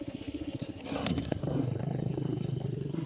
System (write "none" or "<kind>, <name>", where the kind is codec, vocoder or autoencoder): codec, SNAC